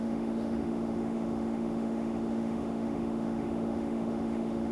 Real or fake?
fake